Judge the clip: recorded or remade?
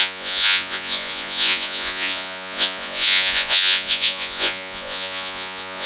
remade